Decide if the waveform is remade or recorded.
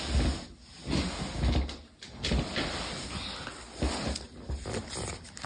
recorded